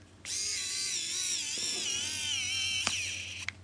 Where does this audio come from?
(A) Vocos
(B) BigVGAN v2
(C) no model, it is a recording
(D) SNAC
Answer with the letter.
C